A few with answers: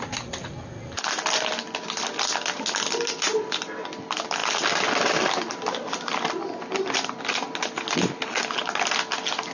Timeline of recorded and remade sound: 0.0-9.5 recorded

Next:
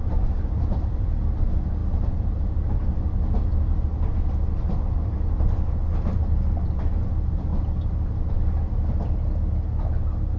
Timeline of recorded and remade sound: 0.0-10.4 recorded